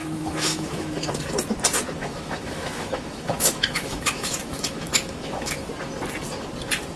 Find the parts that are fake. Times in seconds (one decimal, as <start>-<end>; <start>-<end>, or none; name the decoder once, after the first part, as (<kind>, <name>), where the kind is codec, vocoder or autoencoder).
0.0-1.1 (autoencoder, DAC-VAE); 2.0-5.7